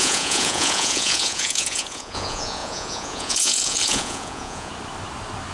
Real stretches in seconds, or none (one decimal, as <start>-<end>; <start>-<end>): 4.7-5.5

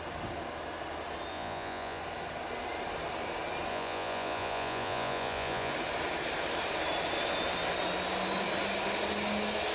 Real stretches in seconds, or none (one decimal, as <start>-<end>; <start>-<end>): 0.0-1.3; 2.0-3.7; 5.7-9.7

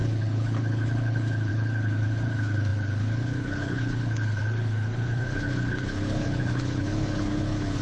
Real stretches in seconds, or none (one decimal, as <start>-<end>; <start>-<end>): none

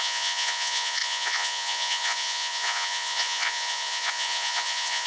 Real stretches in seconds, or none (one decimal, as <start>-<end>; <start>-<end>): none

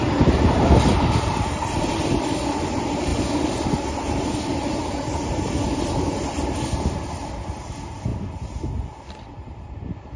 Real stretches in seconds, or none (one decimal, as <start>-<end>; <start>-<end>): 3.1-5.8; 8.1-10.2

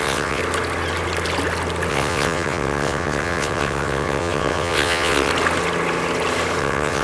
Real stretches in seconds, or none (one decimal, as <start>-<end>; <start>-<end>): 0.4-1.9; 5.3-6.6

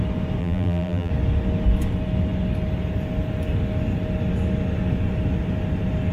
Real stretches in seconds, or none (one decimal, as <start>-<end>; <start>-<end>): 0.0-0.4; 1.1-6.1